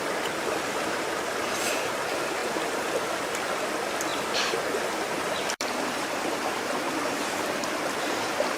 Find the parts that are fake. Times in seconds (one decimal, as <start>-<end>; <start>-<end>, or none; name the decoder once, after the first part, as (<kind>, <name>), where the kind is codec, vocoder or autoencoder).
4.1-6.0 (vocoder, BigVGAN v2)